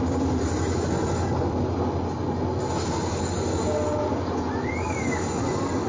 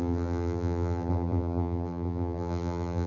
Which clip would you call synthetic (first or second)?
second